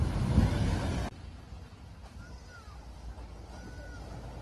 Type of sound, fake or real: real